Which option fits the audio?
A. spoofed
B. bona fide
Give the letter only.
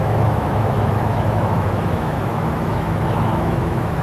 A